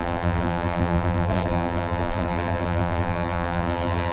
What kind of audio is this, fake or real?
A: fake